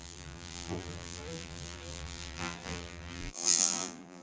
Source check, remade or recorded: remade